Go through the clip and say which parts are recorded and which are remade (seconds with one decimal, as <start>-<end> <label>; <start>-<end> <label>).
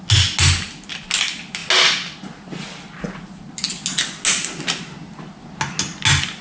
0.0-6.4 recorded